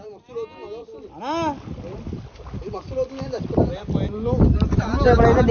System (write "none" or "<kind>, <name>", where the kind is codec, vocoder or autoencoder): none